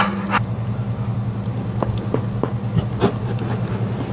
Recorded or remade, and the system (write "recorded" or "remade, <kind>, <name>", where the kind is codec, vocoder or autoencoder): recorded